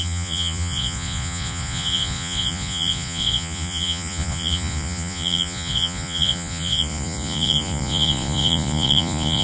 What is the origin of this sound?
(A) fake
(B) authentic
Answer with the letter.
A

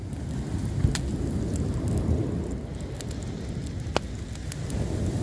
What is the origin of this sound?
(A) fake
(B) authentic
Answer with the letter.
B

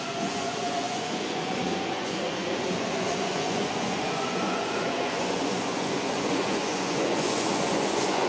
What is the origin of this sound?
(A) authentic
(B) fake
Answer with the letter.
B